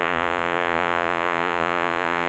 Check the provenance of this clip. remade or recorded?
remade